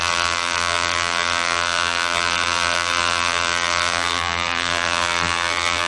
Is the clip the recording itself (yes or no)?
no